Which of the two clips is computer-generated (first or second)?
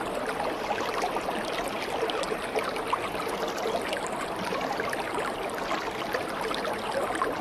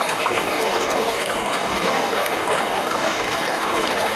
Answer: second